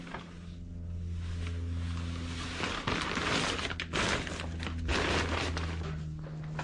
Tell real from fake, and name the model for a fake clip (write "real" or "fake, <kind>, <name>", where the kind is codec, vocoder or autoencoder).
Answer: real